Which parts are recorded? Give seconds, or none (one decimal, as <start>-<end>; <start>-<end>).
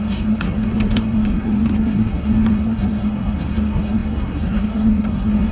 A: none